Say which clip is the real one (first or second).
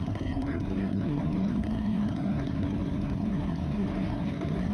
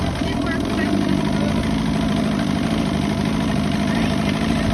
second